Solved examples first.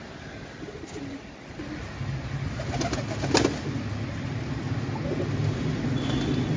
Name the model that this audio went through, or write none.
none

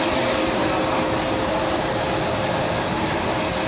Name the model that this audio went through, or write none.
none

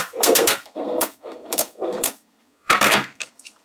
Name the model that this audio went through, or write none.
codec, SNAC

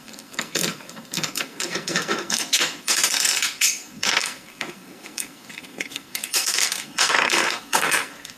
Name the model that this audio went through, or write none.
codec, SNAC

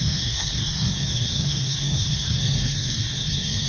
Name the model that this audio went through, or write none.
codec, SNAC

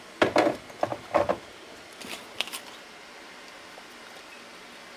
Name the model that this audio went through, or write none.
none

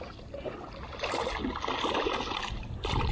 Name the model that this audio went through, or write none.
none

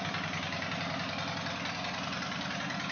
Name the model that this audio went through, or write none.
none